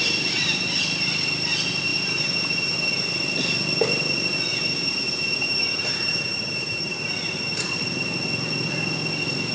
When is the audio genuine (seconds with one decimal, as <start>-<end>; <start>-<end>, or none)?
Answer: 0.0-1.9; 2.9-4.5; 7.2-9.5